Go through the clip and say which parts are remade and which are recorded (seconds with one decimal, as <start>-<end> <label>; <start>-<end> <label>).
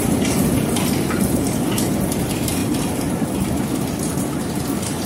0.0-5.1 recorded